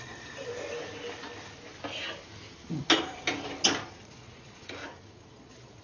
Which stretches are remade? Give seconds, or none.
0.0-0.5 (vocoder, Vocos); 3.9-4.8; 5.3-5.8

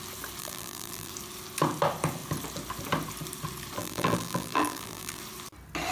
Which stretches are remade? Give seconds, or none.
0.4-1.1 (vocoder, BigVGAN v2); 3.8-5.2

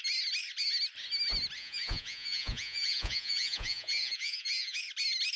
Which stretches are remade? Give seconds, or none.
1.6-4.8 (vocoder, Vocos)